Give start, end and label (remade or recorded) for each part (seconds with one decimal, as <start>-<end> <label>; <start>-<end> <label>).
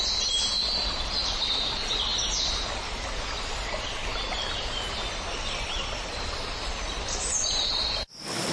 0.0-8.5 recorded